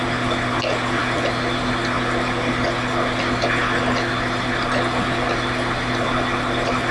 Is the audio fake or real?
real